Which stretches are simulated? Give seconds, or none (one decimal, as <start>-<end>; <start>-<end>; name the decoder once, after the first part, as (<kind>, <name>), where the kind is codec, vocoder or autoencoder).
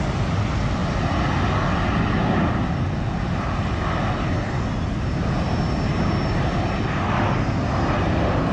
none